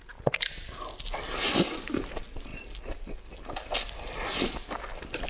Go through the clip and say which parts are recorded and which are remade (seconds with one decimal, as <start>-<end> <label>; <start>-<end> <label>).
0.0-5.3 recorded